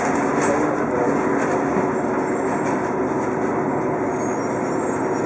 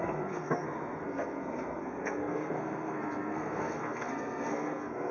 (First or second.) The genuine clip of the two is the first